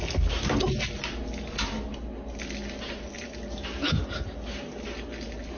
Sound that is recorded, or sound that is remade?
recorded